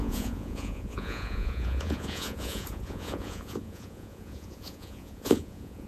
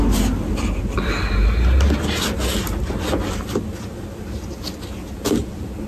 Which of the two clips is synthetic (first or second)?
first